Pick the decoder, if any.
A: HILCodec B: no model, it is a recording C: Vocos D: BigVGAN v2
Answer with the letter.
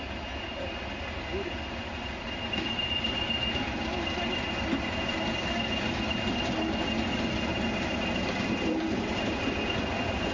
B